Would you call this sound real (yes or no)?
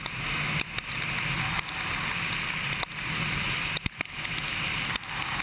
yes